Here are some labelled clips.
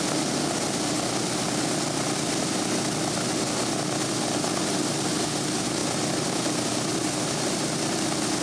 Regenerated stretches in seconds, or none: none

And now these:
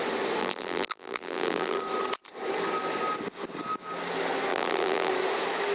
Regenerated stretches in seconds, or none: 0.4-1.8 (vocoder, BigVGAN v2); 4.5-5.1

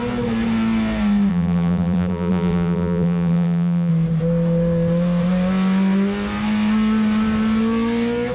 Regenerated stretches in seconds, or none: 1.3-3.9 (vocoder, BigVGAN v2)